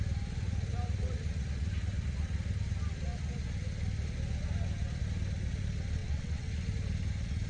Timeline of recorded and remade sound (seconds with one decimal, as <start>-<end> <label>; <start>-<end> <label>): 0.0-6.0 recorded; 6.0-6.5 remade; 6.5-7.5 recorded